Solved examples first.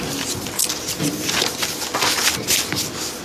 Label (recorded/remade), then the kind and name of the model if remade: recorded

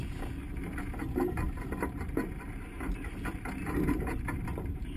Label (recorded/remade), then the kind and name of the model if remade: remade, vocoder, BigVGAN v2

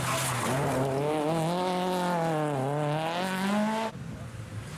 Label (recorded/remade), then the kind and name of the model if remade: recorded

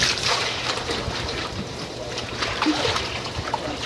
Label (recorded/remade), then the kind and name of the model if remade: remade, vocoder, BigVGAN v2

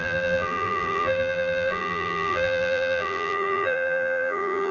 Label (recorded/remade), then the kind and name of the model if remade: remade, vocoder, BigVGAN v2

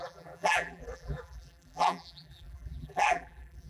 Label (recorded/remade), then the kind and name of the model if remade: remade, vocoder, BigVGAN v2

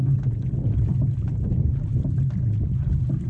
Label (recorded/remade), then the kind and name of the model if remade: recorded